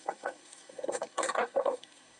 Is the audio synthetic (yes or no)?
yes